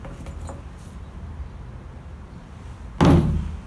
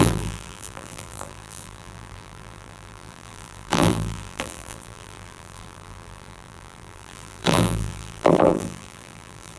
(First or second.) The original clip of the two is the first